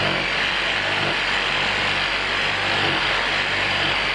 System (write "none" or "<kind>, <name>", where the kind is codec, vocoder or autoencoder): none